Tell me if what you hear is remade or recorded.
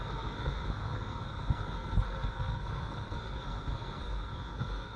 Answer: remade